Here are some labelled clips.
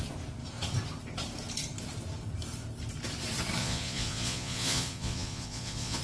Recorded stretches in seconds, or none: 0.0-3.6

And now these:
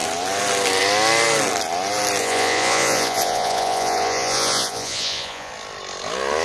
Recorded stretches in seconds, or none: 0.0-2.2; 5.5-6.4

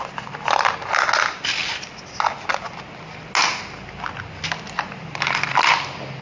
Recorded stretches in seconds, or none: 0.0-6.2

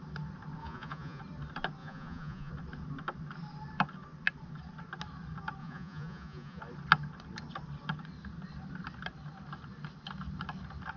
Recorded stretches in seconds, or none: 0.0-0.6; 1.2-1.8; 2.5-5.6; 6.6-11.0

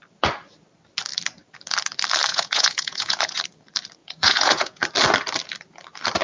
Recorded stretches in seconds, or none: 0.0-2.3; 3.4-4.0; 4.8-6.2